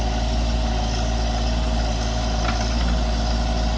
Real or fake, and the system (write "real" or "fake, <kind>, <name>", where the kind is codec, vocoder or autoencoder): real